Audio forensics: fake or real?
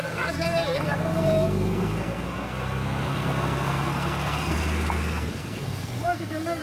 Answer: fake